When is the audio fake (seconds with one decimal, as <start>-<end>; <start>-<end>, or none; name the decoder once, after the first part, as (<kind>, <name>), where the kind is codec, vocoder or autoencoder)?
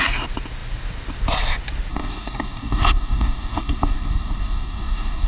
1.9-5.3 (codec, DAC)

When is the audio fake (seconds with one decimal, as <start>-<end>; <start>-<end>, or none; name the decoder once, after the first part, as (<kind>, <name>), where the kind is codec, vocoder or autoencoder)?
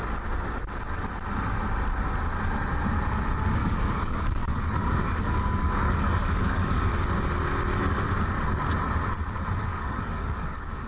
3.6-6.9 (codec, DAC); 9.7-10.9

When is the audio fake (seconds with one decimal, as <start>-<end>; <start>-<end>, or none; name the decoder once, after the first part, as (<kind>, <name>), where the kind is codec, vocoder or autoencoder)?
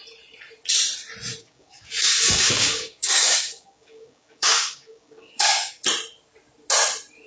1.4-5.8 (codec, DAC)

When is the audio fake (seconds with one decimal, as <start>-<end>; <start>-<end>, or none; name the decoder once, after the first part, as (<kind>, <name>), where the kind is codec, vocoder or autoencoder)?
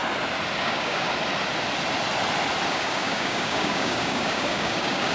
0.6-1.1 (codec, DAC); 2.7-5.1